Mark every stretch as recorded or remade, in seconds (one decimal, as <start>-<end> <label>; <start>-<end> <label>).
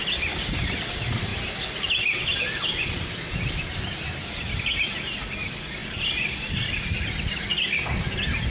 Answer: 0.0-8.5 recorded